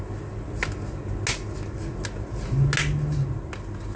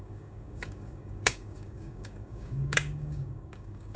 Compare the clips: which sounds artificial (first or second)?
second